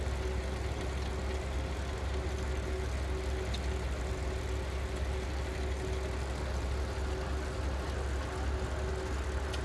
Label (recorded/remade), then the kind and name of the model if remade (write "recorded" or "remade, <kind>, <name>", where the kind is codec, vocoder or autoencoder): recorded